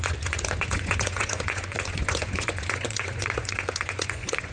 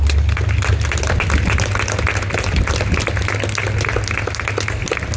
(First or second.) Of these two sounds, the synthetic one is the first